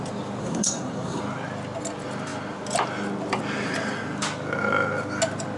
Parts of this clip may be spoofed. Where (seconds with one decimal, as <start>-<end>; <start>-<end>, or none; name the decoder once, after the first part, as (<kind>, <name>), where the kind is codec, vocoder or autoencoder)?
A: 0.4-1.2 (codec, SNAC)